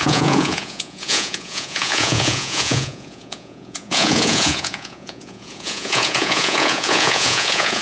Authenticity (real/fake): fake